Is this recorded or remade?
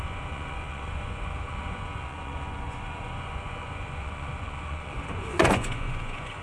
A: remade